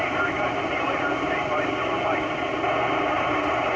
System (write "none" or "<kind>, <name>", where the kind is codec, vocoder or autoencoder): none